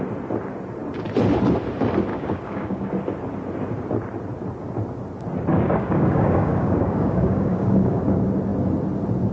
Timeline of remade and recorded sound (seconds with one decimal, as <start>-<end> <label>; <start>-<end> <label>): 0.0-2.1 recorded; 2.1-2.9 remade; 2.9-5.5 recorded; 5.5-8.0 remade; 8.0-9.3 recorded